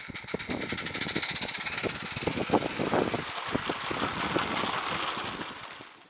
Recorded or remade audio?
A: recorded